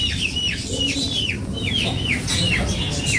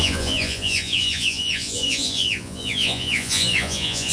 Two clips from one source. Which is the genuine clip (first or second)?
first